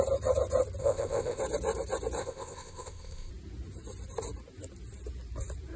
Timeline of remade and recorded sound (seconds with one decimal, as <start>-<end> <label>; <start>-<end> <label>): 0.0-0.8 recorded; 0.8-1.4 remade; 1.4-2.2 recorded; 2.2-3.3 remade; 3.3-5.8 recorded